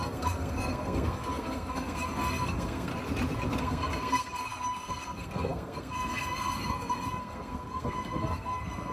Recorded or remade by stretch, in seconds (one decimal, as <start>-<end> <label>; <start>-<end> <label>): 0.0-2.9 remade; 2.9-3.6 recorded; 3.6-8.9 remade